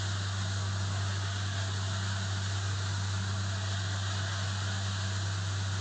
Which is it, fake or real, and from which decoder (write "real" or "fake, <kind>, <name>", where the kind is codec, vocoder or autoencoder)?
real